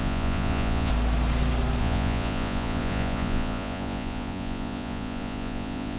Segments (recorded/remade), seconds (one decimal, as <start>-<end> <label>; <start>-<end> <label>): 0.0-0.9 remade; 0.9-1.8 recorded; 1.8-6.0 remade